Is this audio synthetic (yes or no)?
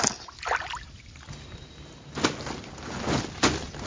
no